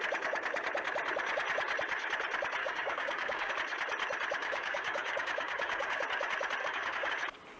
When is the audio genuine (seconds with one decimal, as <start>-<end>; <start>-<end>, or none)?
0.0-2.6; 3.5-4.4; 6.0-6.6; 7.1-7.6